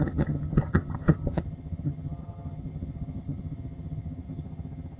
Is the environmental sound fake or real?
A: fake